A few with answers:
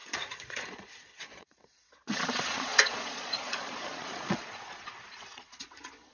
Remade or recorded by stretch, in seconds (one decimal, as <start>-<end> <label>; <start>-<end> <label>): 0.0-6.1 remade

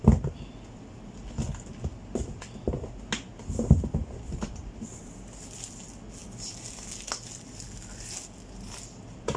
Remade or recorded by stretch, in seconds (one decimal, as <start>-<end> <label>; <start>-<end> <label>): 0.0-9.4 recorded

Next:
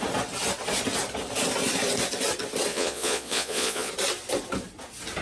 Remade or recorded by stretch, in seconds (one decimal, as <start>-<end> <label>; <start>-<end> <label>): 0.0-2.7 recorded; 2.7-3.9 remade; 3.9-5.2 recorded

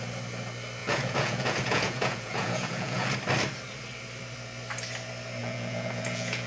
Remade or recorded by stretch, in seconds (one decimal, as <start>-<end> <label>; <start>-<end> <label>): 0.0-0.8 recorded; 0.8-3.1 remade; 3.1-5.4 recorded; 5.4-6.5 remade